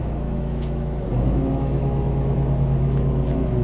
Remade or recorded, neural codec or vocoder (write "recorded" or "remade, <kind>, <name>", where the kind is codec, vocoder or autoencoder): remade, autoencoder, DAC-VAE